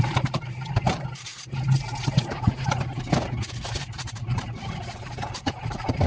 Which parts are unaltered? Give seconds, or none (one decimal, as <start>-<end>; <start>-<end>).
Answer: 1.3-4.1